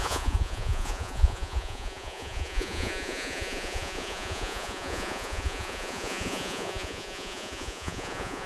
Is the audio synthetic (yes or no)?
yes